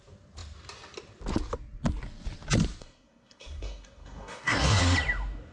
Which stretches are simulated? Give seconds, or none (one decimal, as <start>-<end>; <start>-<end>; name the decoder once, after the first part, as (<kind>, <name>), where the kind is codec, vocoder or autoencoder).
2.8-4.8 (codec, SNAC)